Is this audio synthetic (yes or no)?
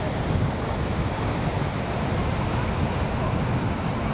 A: no